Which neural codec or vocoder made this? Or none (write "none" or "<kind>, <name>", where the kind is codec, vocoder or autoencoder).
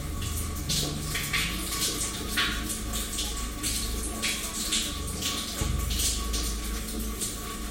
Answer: none